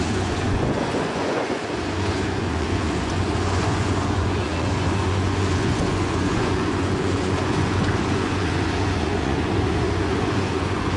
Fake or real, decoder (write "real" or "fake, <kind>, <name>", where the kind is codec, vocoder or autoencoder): fake, vocoder, Vocos